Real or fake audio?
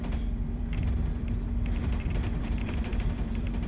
fake